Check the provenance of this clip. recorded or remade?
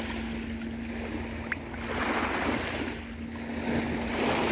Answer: recorded